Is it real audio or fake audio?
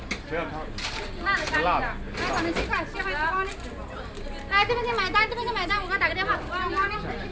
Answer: real